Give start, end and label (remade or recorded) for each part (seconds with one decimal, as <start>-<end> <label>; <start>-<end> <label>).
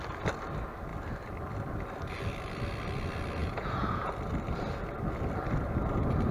0.0-3.4 recorded; 3.4-4.1 remade; 4.1-6.3 recorded